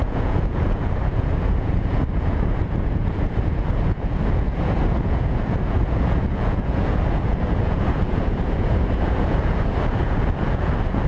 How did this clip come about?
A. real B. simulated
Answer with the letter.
B